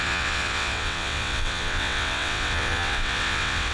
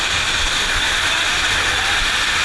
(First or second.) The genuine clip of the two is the second